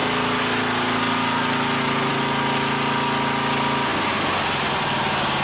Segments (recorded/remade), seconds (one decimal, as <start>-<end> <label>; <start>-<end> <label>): 0.0-5.4 recorded